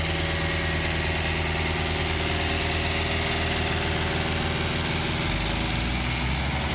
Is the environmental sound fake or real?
real